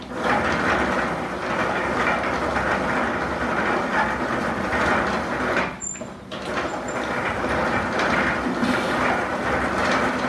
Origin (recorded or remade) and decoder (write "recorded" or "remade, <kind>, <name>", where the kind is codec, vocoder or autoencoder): recorded